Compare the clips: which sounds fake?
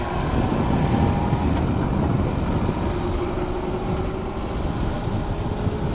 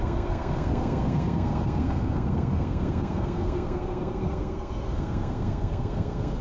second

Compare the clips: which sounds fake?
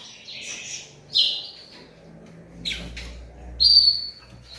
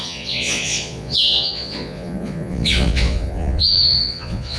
second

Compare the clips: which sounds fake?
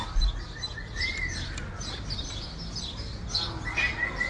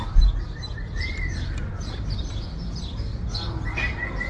second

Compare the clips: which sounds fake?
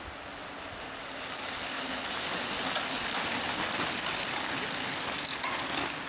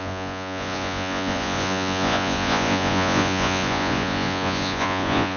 second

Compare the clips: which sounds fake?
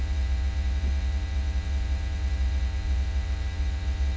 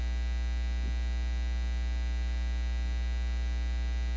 first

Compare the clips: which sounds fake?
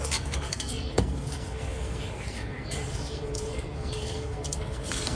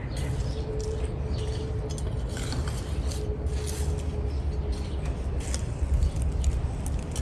first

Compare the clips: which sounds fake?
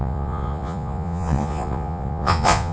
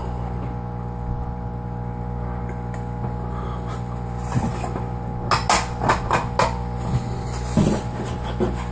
first